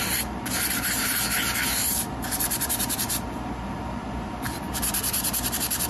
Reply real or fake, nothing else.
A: fake